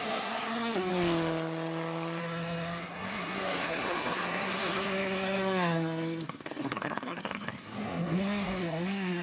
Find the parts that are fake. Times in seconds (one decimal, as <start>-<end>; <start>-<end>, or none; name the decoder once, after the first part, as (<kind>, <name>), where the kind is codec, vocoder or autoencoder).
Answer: 0.0-0.9 (codec, SNAC); 2.2-9.2